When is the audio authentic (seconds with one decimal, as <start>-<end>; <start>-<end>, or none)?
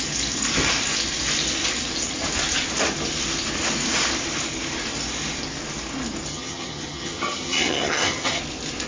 0.0-6.3; 8.4-8.9